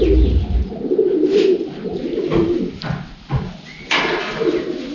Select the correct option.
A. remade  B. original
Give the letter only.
B